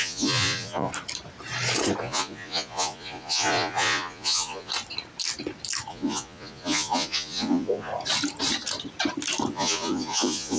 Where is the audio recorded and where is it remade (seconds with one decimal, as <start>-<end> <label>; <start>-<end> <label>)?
0.0-0.9 remade; 0.9-2.0 recorded; 2.0-4.7 remade; 4.7-5.9 recorded; 5.9-7.9 remade; 7.9-9.5 recorded; 9.5-10.6 remade